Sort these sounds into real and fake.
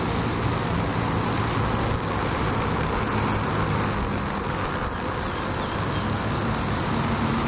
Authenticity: real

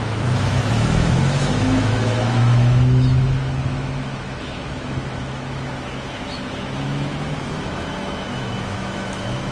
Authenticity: fake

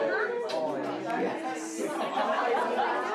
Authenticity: real